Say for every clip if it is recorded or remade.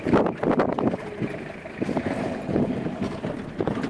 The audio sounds recorded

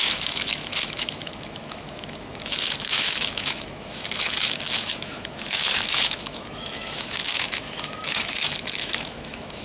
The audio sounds remade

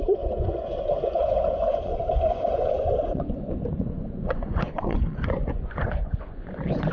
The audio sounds remade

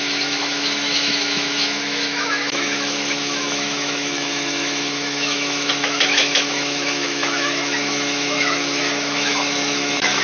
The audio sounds remade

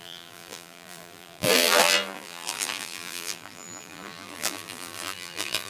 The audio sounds remade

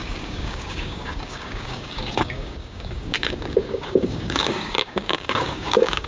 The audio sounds remade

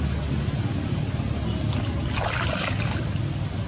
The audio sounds recorded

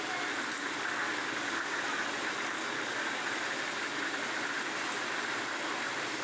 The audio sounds recorded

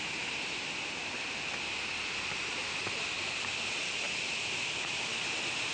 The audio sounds remade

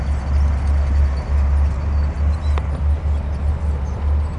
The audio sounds recorded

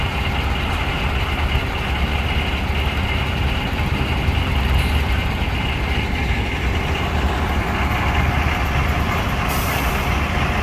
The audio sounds recorded